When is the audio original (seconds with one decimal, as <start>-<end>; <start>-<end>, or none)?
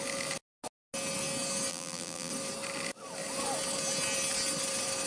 0.0-1.7; 2.3-5.1